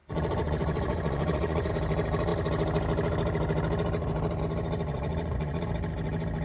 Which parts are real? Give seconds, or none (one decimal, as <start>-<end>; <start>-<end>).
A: 1.7-4.9; 5.6-6.4